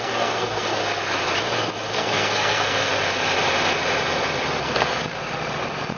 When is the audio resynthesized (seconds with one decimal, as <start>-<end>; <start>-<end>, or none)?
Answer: 0.0-0.8; 1.9-2.9; 4.6-5.0